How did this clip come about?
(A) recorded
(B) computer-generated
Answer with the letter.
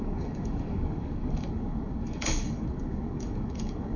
B